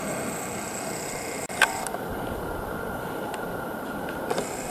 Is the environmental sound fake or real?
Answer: real